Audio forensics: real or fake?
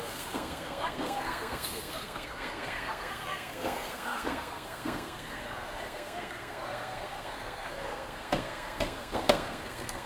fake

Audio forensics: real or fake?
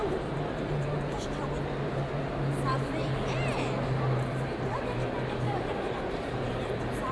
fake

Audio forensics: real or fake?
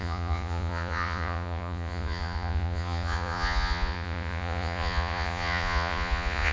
fake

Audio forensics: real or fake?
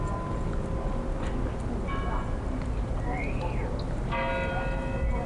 real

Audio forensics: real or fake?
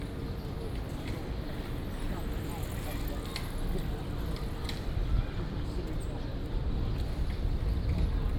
real